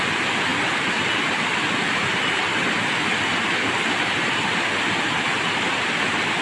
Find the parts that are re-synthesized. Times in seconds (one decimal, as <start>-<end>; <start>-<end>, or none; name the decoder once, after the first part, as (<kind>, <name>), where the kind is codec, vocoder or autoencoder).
none